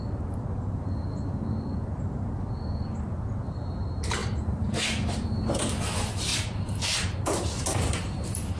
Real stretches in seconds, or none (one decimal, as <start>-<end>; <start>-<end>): 0.0-4.2; 5.6-6.3